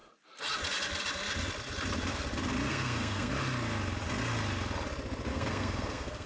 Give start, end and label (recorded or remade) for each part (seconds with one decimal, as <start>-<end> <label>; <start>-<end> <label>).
0.0-2.7 recorded; 2.7-3.3 remade; 3.3-5.3 recorded; 5.3-6.3 remade